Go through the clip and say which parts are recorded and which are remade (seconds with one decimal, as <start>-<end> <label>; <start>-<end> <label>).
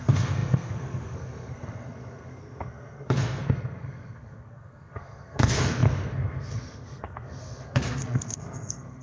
0.0-9.0 remade